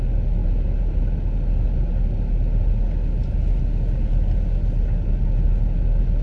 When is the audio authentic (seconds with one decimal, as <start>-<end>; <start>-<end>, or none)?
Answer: 0.0-6.2